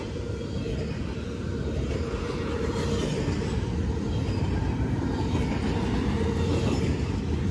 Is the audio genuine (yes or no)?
yes